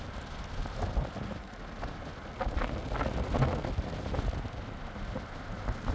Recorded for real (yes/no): yes